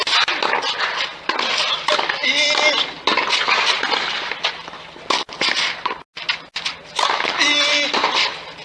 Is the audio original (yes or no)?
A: yes